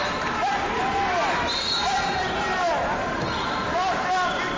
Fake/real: real